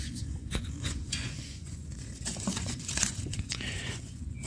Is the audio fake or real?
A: fake